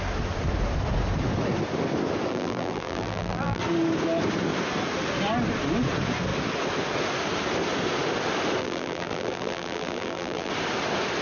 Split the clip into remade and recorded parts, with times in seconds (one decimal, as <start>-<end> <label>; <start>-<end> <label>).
0.0-2.3 recorded; 2.3-3.6 remade; 3.6-8.6 recorded; 8.6-10.5 remade; 10.5-11.2 recorded